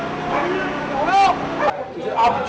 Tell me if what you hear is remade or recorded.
recorded